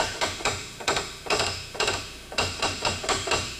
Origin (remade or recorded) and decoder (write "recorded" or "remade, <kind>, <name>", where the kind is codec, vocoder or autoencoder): remade, autoencoder, DAC-VAE